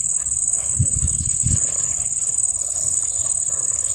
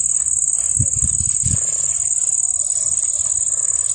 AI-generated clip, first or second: first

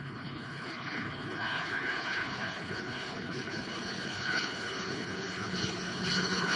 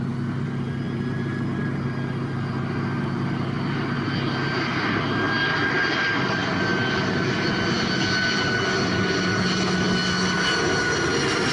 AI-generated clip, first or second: first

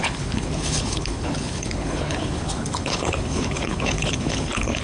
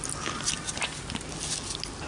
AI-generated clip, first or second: first